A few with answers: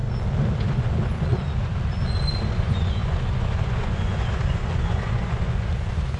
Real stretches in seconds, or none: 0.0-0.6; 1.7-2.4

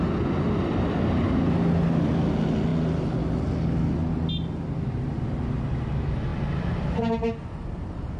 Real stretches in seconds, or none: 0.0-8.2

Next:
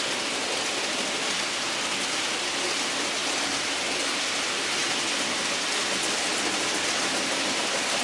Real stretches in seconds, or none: 0.0-8.0

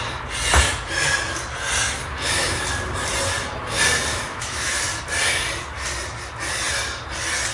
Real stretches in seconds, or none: 0.0-2.1; 2.6-4.1; 4.8-7.5

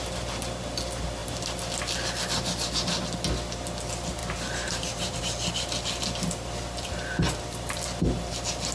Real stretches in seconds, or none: 0.0-4.2; 5.2-8.7

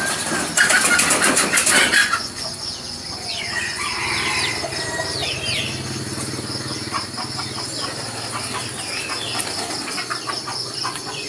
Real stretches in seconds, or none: 0.0-2.0; 4.0-10.5

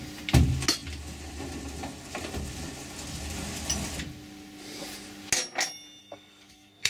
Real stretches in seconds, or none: 0.0-6.0